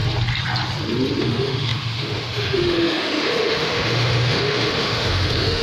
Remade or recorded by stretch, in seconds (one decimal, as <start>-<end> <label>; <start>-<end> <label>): 0.0-1.2 recorded; 1.2-5.6 remade